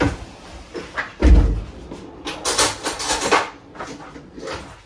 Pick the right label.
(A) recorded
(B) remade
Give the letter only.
A